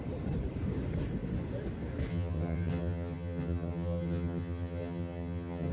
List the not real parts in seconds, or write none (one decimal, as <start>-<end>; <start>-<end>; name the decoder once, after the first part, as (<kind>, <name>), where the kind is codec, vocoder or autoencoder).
2.1-5.7 (vocoder, HiFi-GAN)

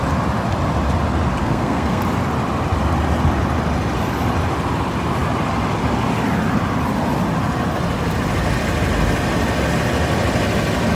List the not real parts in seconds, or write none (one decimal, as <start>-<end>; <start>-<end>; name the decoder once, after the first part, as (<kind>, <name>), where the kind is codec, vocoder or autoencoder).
1.4-2.0 (codec, SNAC)

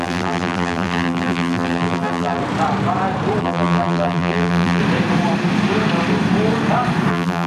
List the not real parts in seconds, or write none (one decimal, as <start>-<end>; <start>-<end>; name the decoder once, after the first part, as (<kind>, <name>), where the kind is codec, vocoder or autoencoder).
0.0-2.4 (vocoder, BigVGAN v2); 3.4-4.8; 7.1-7.5

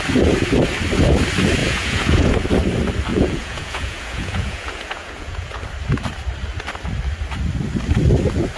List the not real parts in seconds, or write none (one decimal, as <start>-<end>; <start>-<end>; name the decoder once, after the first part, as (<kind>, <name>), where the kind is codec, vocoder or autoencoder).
1.6-2.3 (vocoder, Vocos); 3.1-5.6

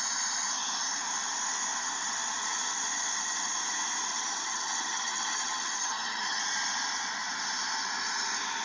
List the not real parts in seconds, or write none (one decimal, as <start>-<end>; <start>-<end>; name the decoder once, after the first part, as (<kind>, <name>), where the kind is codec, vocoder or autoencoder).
4.1-6.4 (vocoder, HiFi-GAN)